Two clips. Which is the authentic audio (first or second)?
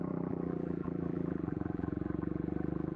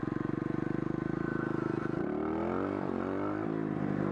second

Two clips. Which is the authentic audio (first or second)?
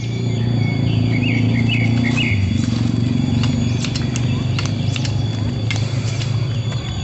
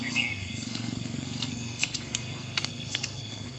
first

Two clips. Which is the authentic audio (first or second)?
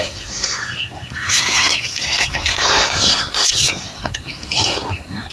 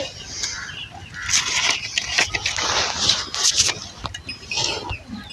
second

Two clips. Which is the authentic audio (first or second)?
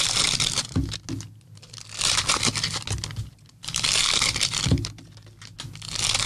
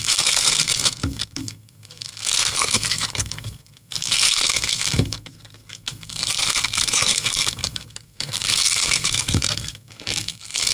first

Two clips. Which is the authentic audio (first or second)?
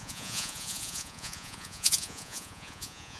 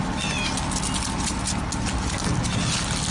second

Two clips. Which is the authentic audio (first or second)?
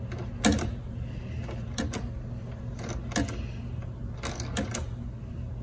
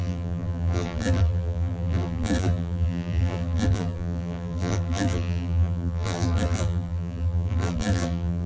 first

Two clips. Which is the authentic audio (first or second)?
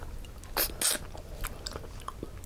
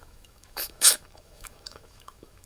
first